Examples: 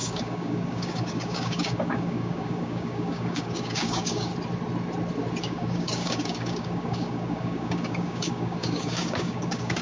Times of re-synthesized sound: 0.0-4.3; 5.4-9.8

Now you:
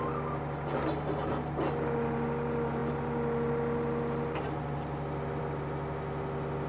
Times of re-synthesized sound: none

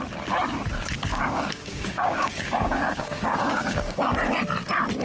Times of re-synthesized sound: 1.1-4.1

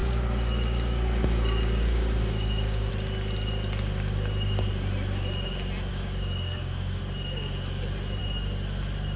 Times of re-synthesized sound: 0.0-2.9; 5.9-7.0